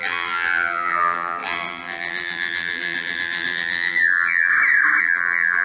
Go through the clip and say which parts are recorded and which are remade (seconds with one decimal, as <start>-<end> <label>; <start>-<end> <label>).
0.0-4.5 remade; 4.5-5.0 recorded; 5.0-5.6 remade